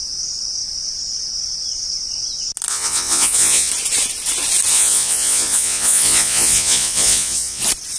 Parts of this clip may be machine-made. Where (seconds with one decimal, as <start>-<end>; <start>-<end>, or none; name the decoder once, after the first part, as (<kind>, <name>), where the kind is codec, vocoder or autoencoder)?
2.7-3.7 (vocoder, Vocos); 4.7-7.6